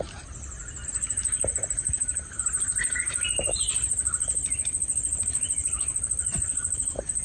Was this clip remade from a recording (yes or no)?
no